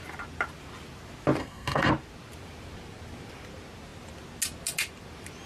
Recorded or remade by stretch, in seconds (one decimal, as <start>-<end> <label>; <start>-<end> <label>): 0.0-1.4 recorded; 1.4-1.9 remade; 1.9-5.5 recorded